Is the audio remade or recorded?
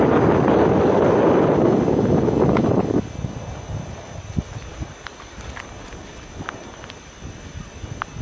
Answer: recorded